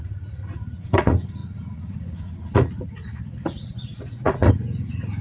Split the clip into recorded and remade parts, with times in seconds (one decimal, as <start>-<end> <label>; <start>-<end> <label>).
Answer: 0.0-5.2 remade